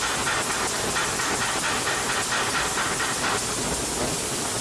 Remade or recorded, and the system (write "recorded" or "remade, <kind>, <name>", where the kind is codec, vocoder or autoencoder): recorded